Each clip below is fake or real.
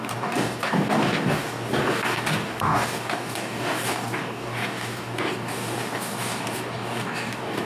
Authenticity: fake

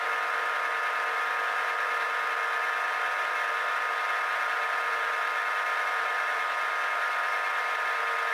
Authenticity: real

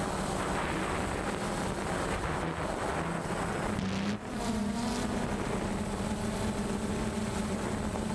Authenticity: real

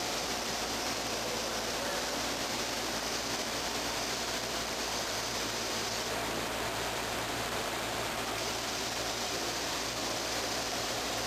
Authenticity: fake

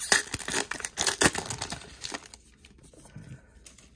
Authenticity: real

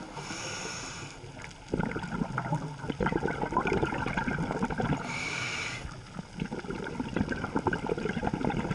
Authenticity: real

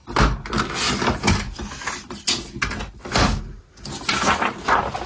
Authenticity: real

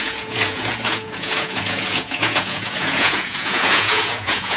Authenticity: fake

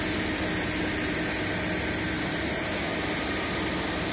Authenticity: real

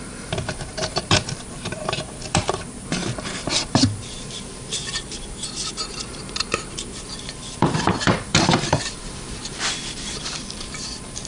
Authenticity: fake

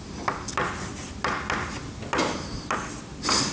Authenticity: real